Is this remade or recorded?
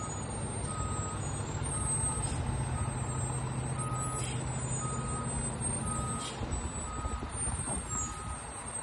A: recorded